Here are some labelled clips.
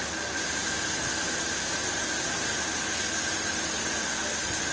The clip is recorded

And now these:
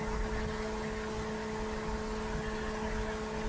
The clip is recorded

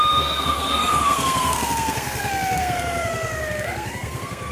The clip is remade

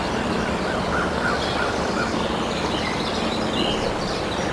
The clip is recorded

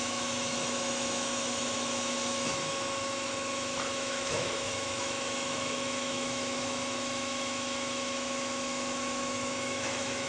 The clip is remade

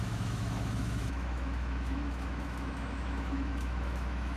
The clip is remade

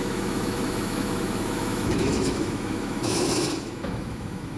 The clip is remade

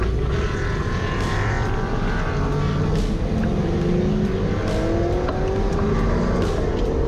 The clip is recorded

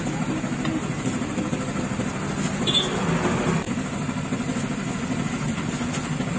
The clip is recorded